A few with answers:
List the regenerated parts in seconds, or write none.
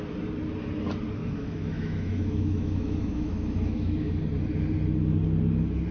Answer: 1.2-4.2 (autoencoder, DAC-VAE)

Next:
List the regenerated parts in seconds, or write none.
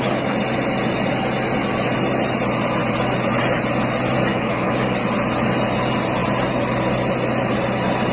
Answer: 4.3-5.0 (autoencoder, DAC-VAE)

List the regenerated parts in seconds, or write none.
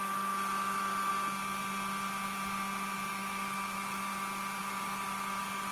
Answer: 0.0-1.1 (autoencoder, DAC-VAE); 3.1-4.1; 4.6-5.7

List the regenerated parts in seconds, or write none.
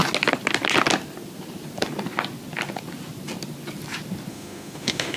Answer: 4.3-5.2 (autoencoder, DAC-VAE)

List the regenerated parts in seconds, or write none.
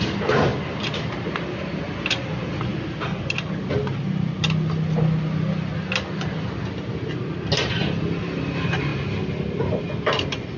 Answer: none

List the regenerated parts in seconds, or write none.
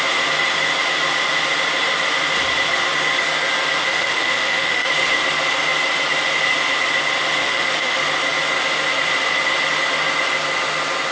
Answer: 3.8-4.9 (autoencoder, DAC-VAE); 7.4-8.0